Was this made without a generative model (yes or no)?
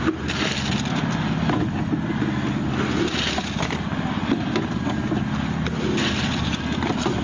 yes